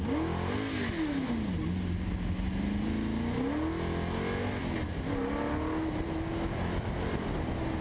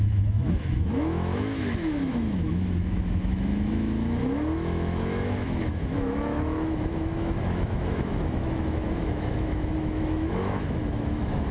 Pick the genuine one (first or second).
first